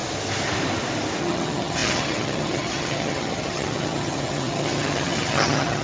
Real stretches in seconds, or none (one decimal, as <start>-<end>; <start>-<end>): 0.0-1.2